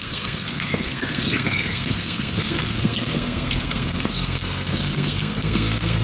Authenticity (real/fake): fake